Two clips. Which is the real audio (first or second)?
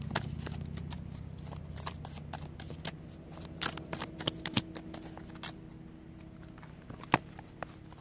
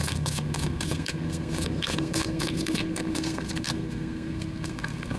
first